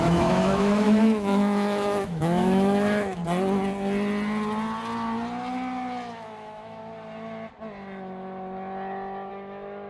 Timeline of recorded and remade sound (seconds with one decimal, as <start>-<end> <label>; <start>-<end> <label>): 0.0-3.2 remade; 3.2-6.1 recorded; 6.1-6.8 remade; 6.8-9.3 recorded; 9.3-9.9 remade